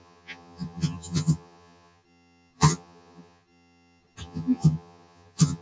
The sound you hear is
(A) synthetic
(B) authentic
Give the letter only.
A